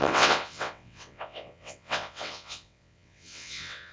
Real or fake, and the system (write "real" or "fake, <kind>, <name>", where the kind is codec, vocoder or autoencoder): fake, vocoder, WaveNeXt